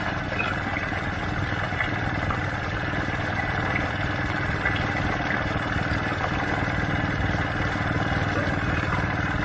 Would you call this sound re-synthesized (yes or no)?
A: no